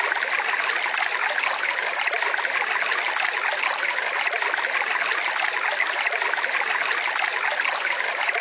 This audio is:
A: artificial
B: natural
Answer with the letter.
B